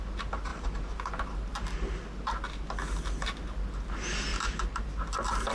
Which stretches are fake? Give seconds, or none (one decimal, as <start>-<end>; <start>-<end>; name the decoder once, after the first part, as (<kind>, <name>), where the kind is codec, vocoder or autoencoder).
0.5-1.2 (vocoder, BigVGAN v2); 4.3-5.0